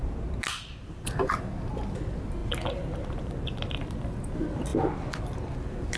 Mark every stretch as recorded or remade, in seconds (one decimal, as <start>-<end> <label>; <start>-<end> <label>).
0.0-6.0 recorded